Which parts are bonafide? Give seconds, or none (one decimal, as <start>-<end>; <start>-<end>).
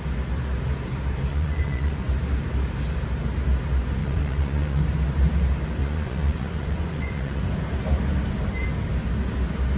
0.0-1.3; 2.1-4.0; 4.8-5.8; 7.4-9.8